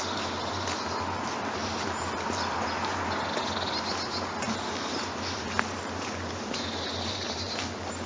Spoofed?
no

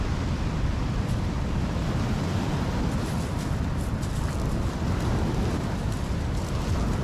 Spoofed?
no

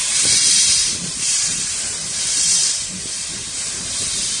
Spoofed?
yes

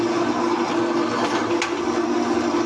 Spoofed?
no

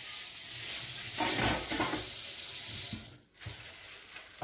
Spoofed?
no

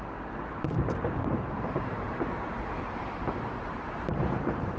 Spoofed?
yes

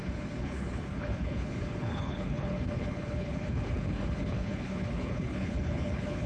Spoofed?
yes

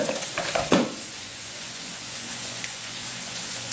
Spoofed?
yes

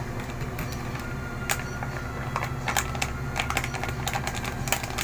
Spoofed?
no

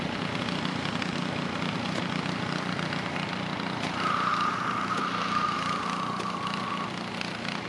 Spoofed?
no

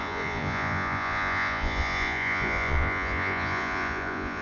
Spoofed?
yes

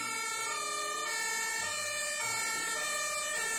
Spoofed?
no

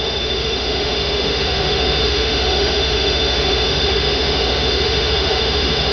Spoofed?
yes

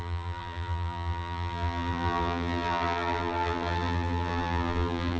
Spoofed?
yes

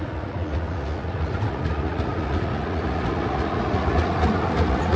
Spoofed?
yes